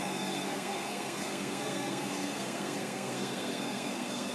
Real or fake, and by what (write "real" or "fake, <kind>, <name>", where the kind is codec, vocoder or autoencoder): fake, codec, SNAC